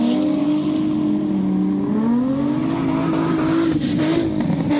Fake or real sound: real